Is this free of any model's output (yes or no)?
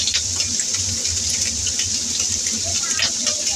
yes